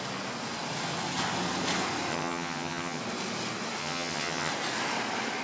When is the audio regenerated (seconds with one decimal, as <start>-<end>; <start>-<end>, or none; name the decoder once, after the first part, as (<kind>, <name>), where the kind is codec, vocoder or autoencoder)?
2.1-3.0 (vocoder, HiFi-GAN); 3.8-4.5